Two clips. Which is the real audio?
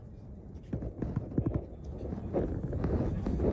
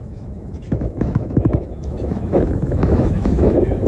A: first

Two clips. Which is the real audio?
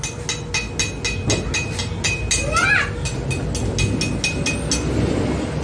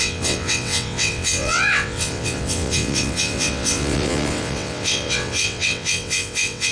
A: first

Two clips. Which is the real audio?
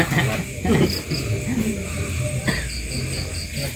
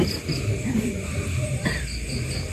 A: first